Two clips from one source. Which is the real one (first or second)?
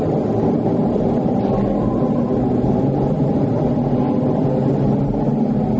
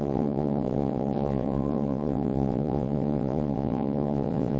first